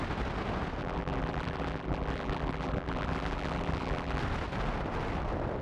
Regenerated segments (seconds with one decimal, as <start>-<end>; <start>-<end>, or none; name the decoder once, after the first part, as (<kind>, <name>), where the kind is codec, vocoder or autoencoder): 0.8-4.2 (vocoder, BigVGAN v2)

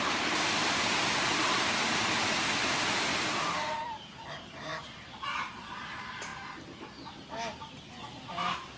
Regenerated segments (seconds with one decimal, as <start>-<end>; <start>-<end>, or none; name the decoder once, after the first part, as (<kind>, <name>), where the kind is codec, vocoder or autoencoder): 0.0-3.1 (vocoder, BigVGAN v2); 4.3-4.7; 5.6-6.3; 7.9-8.8

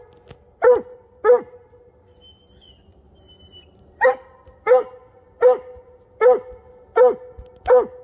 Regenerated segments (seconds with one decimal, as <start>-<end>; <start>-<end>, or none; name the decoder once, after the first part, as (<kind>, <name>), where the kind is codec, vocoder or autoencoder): 2.9-4.1 (vocoder, BigVGAN v2)

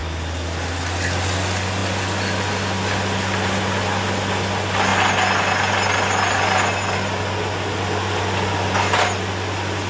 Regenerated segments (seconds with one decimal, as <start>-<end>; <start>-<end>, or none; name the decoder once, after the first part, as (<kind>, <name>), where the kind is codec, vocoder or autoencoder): none

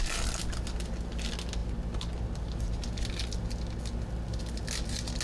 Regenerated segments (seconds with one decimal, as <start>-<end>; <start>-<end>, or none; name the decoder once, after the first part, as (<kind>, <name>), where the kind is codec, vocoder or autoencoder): none

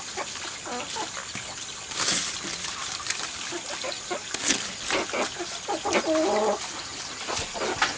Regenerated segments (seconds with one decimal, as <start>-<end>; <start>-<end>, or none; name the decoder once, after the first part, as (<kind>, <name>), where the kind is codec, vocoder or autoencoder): 2.8-3.8 (vocoder, BigVGAN v2)

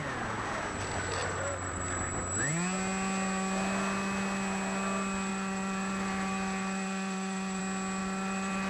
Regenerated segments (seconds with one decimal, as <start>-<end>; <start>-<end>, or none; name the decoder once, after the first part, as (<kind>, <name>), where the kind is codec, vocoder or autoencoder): 1.2-1.8 (vocoder, BigVGAN v2); 5.3-7.6; 8.0-8.7

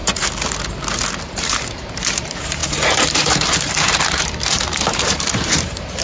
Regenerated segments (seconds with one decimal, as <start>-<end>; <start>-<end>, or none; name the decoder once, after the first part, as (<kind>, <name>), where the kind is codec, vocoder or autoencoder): 1.3-6.0 (vocoder, BigVGAN v2)